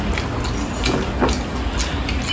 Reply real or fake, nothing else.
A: real